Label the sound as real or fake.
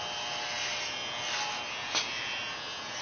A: real